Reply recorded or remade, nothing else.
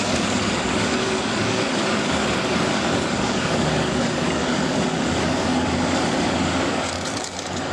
remade